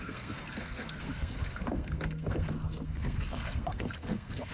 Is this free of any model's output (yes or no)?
no